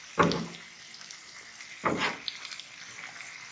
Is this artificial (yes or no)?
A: no